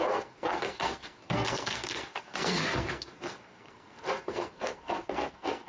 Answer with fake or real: fake